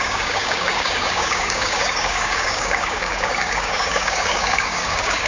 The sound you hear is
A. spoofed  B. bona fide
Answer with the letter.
A